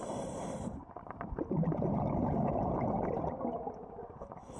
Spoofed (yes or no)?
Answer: yes